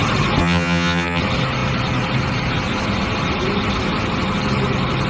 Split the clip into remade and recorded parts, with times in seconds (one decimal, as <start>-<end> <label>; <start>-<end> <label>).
0.0-0.4 recorded; 0.4-1.2 remade; 1.2-5.1 recorded